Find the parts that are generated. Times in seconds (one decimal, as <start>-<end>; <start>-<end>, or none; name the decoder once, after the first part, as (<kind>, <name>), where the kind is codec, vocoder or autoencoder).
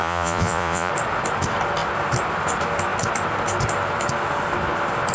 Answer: 0.0-0.9 (vocoder, Vocos)